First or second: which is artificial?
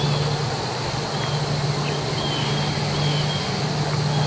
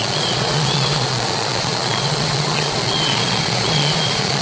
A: second